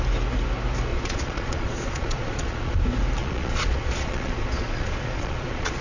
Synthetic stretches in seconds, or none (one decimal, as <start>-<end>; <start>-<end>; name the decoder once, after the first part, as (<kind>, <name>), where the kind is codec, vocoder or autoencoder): 0.9-2.8 (vocoder, Vocos); 3.2-5.8